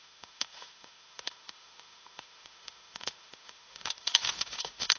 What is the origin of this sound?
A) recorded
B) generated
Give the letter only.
B